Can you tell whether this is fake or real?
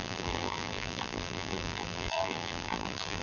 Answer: fake